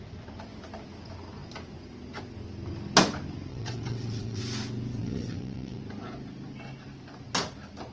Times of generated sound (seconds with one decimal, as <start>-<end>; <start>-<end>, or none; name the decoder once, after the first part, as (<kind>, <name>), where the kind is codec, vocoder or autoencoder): 3.5-4.4 (vocoder, WaveNeXt); 5.0-5.8